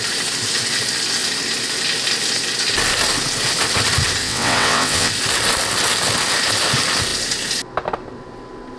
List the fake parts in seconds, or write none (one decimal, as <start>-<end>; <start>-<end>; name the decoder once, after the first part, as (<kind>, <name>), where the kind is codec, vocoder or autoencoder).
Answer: 4.2-5.1 (vocoder, WaveNeXt)